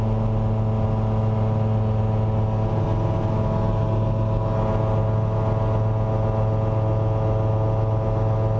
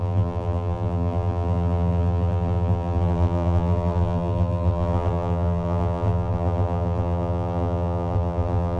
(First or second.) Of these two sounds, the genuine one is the first